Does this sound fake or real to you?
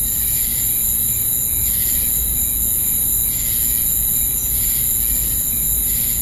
real